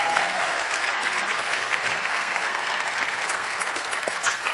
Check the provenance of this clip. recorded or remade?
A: remade